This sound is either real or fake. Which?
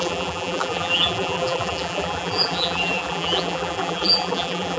fake